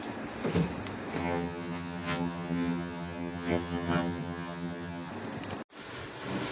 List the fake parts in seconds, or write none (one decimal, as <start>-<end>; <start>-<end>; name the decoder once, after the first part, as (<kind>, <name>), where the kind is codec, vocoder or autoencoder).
1.2-5.1 (vocoder, HiFi-GAN)